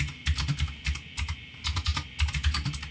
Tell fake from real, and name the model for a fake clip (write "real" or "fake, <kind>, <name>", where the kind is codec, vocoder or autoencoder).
real